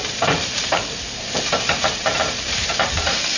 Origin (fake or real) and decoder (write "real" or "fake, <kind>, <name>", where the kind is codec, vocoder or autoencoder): fake, vocoder, BigVGAN v2